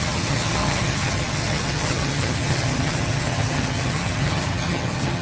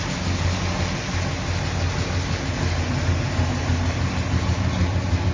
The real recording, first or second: second